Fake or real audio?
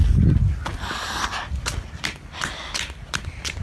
real